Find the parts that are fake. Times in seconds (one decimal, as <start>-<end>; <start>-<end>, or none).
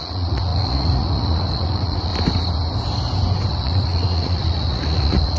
0.0-2.1; 3.5-5.4